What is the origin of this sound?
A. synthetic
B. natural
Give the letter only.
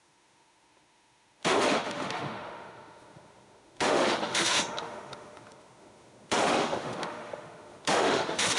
A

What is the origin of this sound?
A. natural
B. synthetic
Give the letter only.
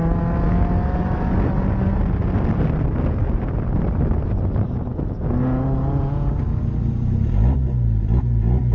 A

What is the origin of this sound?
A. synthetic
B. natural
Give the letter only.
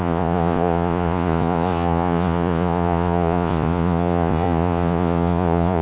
A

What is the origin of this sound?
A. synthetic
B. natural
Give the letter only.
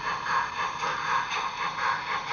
B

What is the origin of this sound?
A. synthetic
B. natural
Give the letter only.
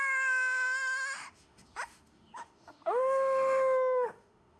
A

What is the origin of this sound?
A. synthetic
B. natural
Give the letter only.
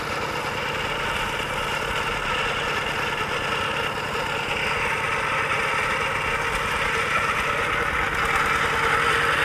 B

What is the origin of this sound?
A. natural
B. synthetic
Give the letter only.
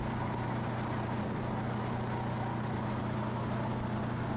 A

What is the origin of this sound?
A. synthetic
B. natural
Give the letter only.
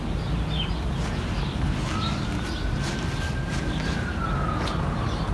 B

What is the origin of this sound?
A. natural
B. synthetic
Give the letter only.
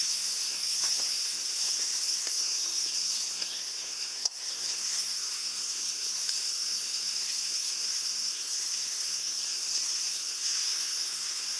B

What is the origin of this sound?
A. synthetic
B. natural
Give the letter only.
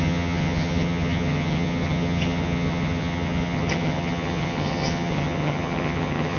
A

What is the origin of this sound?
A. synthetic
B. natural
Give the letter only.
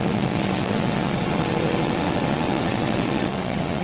A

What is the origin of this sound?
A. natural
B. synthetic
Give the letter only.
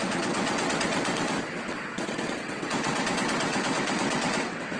B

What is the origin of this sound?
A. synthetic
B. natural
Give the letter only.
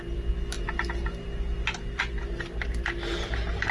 B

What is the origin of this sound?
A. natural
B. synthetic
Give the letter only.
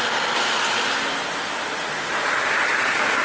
A